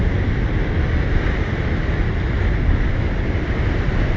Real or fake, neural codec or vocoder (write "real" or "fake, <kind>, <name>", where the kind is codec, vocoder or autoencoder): real